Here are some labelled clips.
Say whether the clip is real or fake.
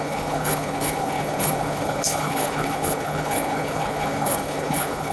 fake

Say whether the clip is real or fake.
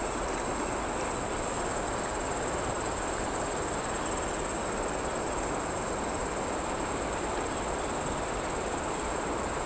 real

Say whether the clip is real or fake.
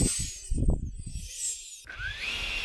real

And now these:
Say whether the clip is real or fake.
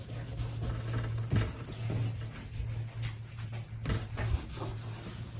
real